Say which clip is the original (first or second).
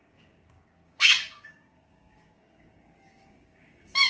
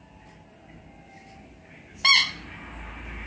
second